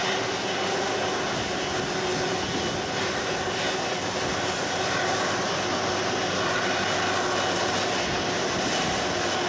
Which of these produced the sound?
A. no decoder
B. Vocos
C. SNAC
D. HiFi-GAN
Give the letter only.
A